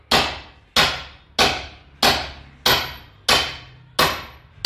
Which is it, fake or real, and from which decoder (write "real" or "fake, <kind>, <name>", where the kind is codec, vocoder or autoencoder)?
real